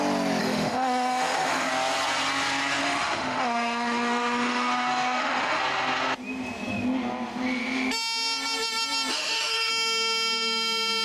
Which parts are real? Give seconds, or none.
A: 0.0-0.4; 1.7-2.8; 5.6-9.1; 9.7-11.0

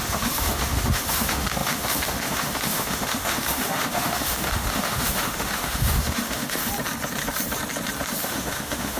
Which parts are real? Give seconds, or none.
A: 6.7-8.2

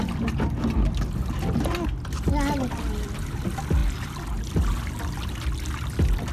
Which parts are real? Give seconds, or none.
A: 0.0-6.3

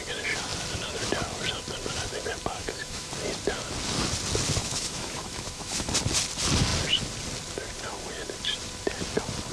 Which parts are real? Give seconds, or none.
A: 0.0-2.6; 3.1-4.6; 5.9-9.5

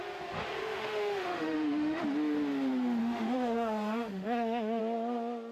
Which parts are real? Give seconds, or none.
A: 0.0-0.6; 2.0-3.0; 4.8-5.5

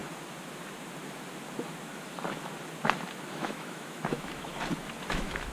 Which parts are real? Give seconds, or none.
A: 0.0-3.3; 4.5-5.1

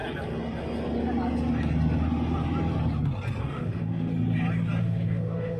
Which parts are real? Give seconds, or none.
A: 0.0-3.4; 4.1-4.8

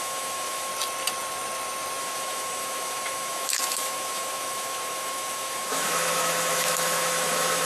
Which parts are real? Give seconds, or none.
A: 0.7-2.0